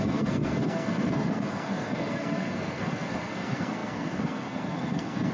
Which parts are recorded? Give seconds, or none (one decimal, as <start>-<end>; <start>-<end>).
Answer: none